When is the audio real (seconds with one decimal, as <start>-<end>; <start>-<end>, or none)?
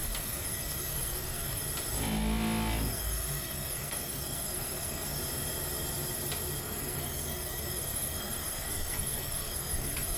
1.6-2.9; 5.2-6.6